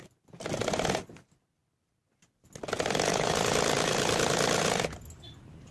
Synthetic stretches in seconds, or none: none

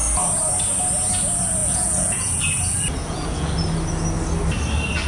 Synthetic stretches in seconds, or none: 1.6-2.4 (vocoder, Vocos); 3.0-3.5

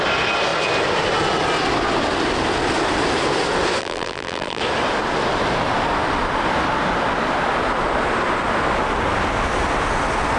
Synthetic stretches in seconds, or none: 3.8-4.6 (vocoder, BigVGAN v2)